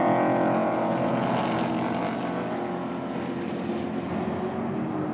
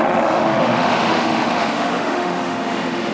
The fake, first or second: second